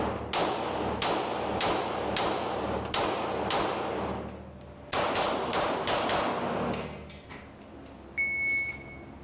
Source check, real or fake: real